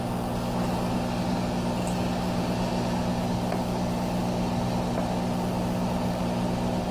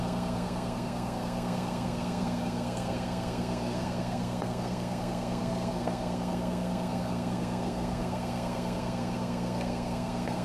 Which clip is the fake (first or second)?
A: second